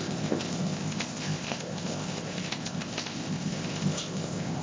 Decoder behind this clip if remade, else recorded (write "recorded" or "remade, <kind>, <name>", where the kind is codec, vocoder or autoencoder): remade, codec, ZipCodec